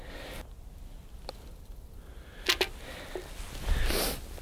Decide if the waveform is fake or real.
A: real